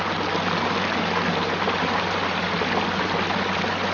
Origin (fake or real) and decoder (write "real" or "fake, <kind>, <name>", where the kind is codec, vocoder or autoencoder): real